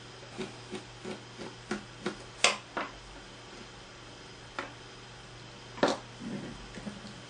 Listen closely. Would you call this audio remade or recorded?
recorded